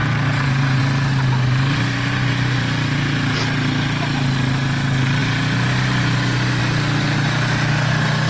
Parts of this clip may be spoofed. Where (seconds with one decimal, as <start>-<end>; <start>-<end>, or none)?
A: 0.0-0.8